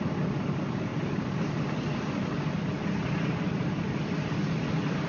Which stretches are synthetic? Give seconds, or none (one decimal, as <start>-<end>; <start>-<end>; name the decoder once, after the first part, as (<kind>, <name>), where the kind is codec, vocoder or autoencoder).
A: none